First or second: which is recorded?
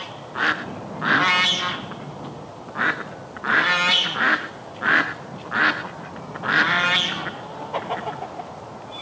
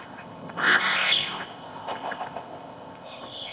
first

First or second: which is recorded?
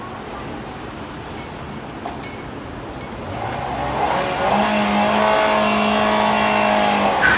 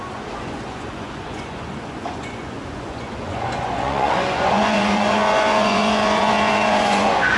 first